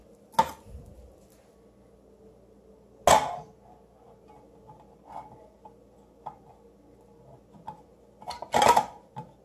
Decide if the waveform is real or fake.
real